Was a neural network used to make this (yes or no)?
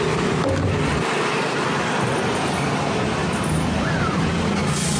no